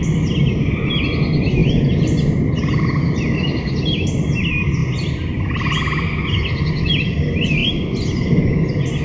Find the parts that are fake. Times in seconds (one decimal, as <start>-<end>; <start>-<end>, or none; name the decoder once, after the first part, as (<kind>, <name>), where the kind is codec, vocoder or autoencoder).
none